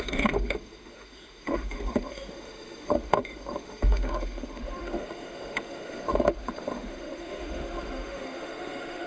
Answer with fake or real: fake